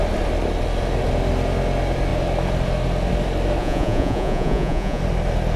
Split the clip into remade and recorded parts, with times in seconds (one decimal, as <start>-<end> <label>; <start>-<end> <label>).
0.0-3.6 recorded; 3.6-5.0 remade; 5.0-5.6 recorded